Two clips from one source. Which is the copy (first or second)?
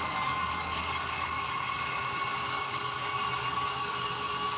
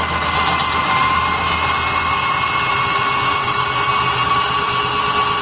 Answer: first